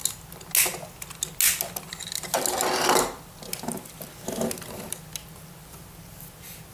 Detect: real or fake real